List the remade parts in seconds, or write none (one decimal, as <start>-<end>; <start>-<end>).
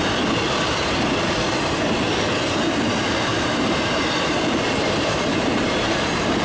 3.3-6.4